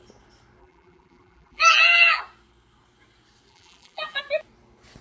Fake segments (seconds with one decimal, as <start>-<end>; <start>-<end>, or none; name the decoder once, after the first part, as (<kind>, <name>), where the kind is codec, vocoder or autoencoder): 0.6-2.2 (vocoder, BigVGAN v2); 3.5-4.2